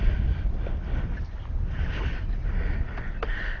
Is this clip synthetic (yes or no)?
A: no